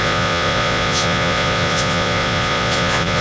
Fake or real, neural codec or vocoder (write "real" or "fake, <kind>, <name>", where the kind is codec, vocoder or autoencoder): fake, vocoder, Vocos